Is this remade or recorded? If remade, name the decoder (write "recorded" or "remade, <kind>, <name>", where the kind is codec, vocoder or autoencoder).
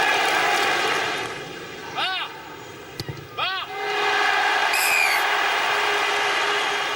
recorded